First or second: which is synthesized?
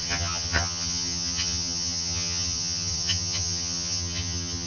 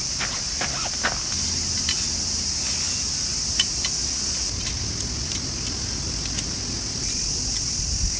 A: first